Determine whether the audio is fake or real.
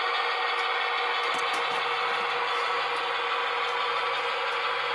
real